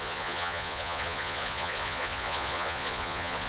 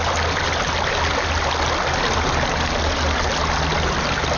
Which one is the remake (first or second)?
first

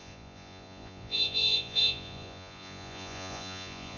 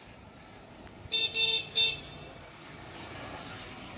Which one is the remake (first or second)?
first